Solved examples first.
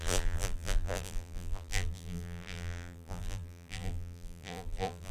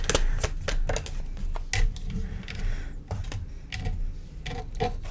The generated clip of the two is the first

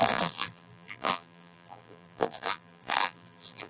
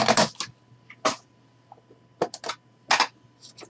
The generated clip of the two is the first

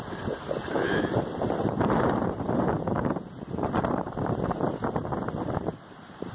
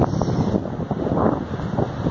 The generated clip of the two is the first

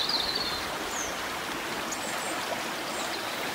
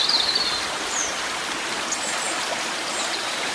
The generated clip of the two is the second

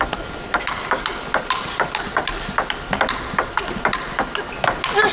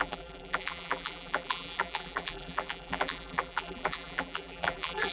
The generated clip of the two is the second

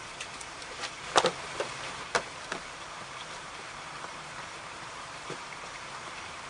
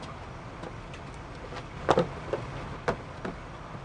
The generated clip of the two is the first